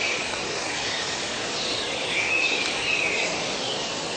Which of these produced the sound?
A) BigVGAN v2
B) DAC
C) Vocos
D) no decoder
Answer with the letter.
B